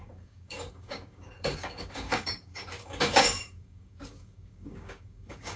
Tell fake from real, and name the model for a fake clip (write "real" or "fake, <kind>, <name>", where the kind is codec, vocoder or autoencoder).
fake, codec, DAC